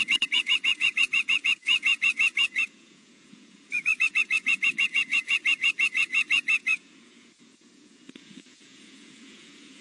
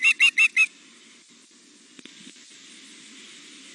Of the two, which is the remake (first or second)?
first